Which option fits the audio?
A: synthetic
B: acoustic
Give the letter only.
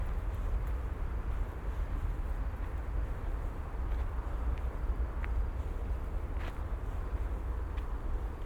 B